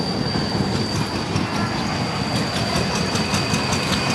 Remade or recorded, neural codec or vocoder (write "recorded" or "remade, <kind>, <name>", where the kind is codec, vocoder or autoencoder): recorded